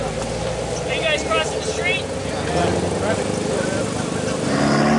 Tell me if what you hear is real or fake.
real